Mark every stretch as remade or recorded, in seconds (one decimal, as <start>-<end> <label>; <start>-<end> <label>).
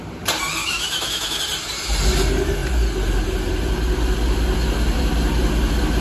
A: 0.0-0.6 recorded; 0.6-1.4 remade; 1.4-6.0 recorded